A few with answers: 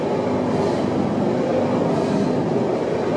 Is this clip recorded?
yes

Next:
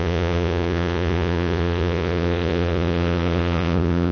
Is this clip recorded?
no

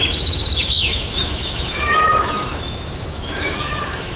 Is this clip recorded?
no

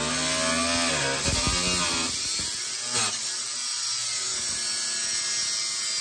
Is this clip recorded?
yes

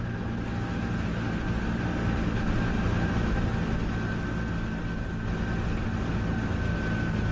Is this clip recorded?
yes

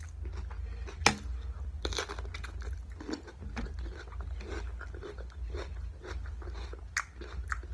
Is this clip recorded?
yes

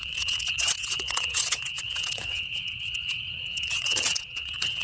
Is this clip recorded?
no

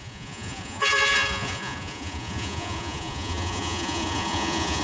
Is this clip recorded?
no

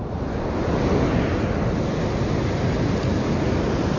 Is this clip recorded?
yes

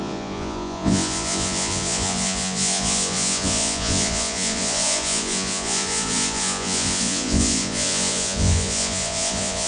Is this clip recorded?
no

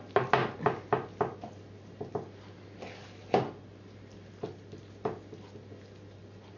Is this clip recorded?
yes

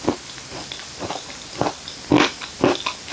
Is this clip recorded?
yes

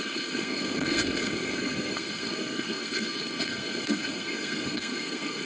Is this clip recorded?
no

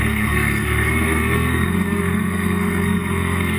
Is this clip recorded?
no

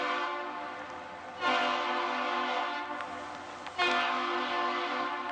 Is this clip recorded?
yes